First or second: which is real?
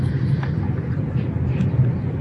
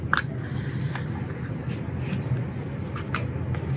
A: second